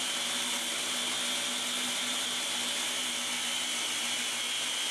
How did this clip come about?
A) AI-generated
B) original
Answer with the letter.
B